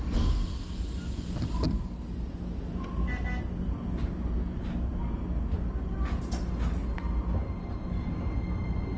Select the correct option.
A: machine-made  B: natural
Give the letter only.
B